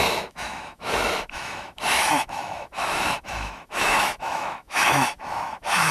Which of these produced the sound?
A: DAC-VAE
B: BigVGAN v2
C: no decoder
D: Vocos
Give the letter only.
A